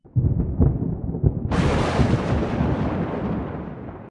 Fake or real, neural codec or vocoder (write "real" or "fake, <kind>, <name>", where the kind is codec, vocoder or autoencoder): real